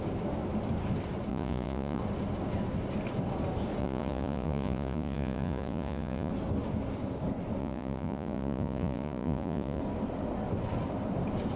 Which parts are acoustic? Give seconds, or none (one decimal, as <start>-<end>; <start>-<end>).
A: 0.0-1.3; 2.0-3.8; 6.3-7.6; 9.8-11.6